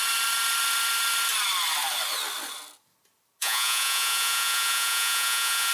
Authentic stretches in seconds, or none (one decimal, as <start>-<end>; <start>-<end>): 0.0-3.4